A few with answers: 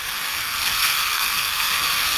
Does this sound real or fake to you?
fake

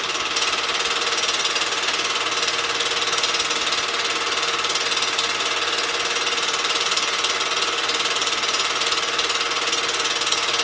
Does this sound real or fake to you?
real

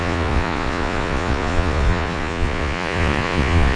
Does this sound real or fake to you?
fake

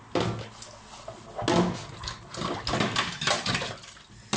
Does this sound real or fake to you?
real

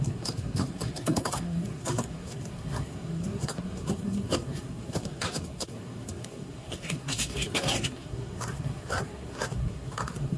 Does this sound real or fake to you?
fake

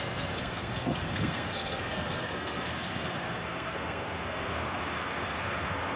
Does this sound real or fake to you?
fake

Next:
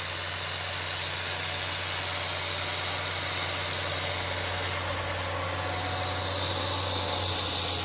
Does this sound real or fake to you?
real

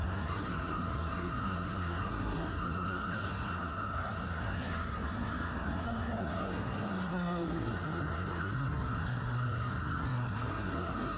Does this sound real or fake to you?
fake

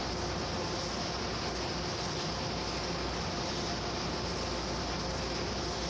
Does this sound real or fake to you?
real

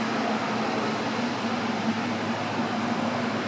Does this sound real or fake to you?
real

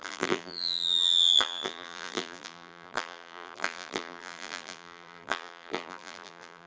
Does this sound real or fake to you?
fake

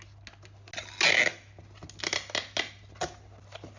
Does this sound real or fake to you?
real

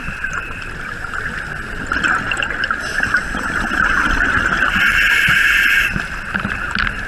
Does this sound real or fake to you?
real